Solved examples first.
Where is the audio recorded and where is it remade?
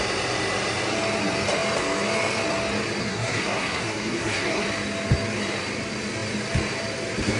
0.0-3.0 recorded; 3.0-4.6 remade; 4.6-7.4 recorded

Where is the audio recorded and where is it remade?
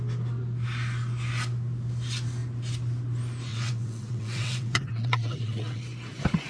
0.0-3.5 recorded; 3.5-5.8 remade; 5.8-6.5 recorded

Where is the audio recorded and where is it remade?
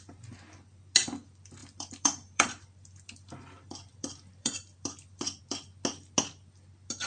0.0-1.6 recorded; 1.6-5.4 remade; 5.4-7.1 recorded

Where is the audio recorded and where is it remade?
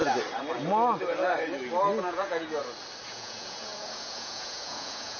0.0-2.1 recorded; 2.1-2.6 remade; 2.6-3.1 recorded; 3.1-5.2 remade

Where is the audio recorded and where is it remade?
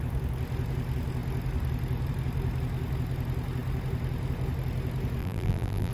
0.0-5.2 recorded; 5.2-5.9 remade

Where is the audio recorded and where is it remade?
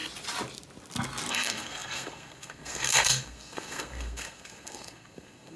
0.0-1.3 recorded; 1.3-5.6 remade